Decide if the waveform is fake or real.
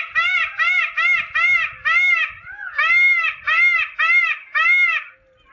real